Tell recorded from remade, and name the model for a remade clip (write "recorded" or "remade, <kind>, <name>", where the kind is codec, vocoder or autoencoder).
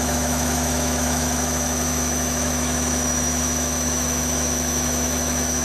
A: remade, autoencoder, DAC-VAE